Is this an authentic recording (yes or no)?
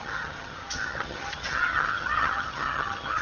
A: no